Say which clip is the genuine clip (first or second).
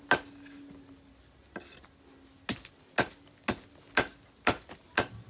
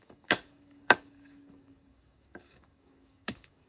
first